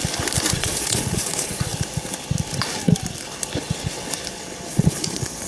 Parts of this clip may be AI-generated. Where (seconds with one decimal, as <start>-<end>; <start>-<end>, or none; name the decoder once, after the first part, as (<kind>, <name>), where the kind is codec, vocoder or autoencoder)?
0.5-1.7 (vocoder, Vocos); 4.7-5.5